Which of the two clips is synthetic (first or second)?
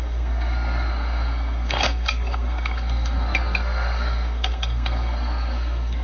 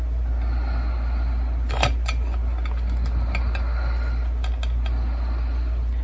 first